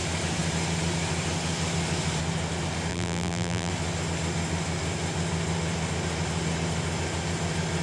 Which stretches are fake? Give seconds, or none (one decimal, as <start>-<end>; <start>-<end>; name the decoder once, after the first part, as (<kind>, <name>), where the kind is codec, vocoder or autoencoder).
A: 2.9-3.7 (vocoder, BigVGAN v2)